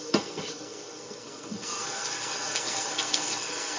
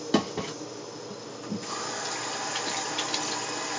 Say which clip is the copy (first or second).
first